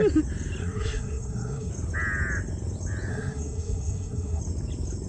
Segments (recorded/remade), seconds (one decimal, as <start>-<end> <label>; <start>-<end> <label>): 0.0-0.6 recorded; 0.6-1.7 remade; 1.7-3.1 recorded; 3.1-4.4 remade; 4.4-5.1 recorded

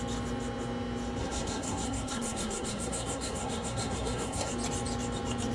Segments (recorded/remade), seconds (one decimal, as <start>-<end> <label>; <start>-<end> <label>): 0.0-1.2 recorded; 1.2-4.5 remade; 4.5-5.5 recorded

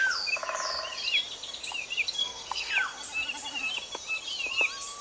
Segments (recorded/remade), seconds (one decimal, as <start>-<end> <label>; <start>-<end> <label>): 0.0-2.2 recorded; 2.2-2.7 remade; 2.7-5.0 recorded

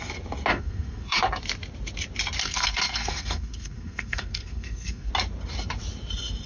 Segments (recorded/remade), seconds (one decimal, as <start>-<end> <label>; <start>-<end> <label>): 0.0-0.5 recorded; 0.5-1.2 remade; 1.2-2.4 recorded; 2.4-5.1 remade; 5.1-6.5 recorded